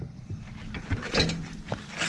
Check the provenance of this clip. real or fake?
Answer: real